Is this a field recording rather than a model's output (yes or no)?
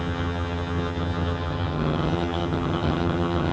no